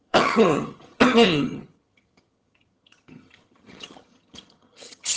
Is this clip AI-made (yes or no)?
yes